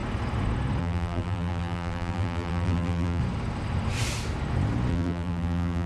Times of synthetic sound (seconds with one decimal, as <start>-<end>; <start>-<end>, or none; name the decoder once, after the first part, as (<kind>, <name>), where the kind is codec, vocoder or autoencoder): 0.8-3.2 (vocoder, BigVGAN v2); 4.9-5.9